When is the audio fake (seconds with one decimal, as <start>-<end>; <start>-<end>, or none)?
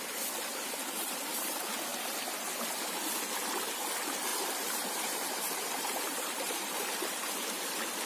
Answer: 0.5-1.1; 4.3-7.0